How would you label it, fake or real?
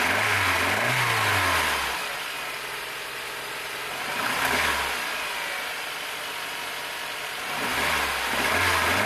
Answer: real